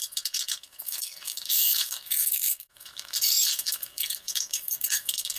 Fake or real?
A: fake